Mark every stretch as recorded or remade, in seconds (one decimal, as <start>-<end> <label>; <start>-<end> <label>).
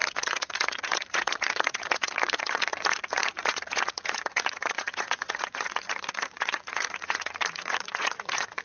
0.0-8.6 remade